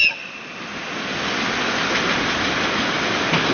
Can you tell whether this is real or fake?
real